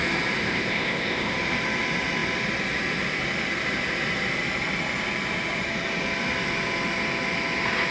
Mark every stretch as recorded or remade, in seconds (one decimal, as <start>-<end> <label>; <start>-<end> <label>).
0.0-0.4 recorded; 0.4-1.3 remade; 1.3-7.9 recorded